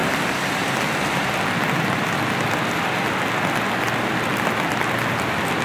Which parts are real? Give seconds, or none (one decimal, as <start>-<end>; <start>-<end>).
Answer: 2.3-5.6